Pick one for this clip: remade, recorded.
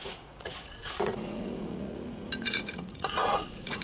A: remade